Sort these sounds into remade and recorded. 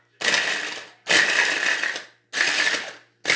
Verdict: recorded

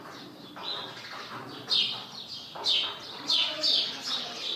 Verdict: recorded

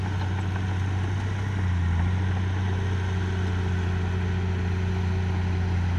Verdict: recorded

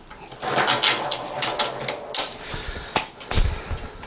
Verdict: recorded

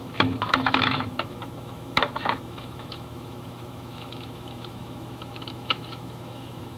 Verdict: remade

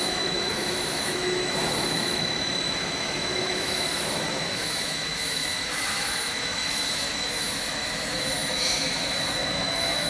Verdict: remade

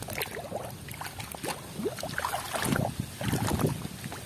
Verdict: recorded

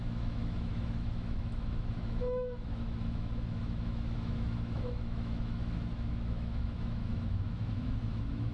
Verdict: remade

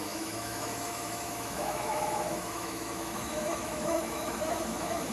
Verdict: remade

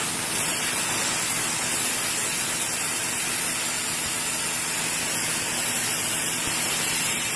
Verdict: recorded